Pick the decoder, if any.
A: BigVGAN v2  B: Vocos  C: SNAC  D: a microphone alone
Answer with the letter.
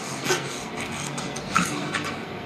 C